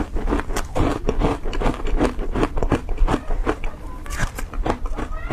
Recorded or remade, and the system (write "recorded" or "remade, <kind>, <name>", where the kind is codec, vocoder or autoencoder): recorded